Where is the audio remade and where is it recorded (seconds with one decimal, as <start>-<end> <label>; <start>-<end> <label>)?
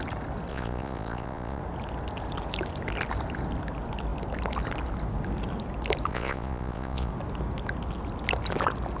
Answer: 0.0-0.5 recorded; 0.5-1.6 remade; 1.6-6.1 recorded; 6.1-7.1 remade; 7.1-9.0 recorded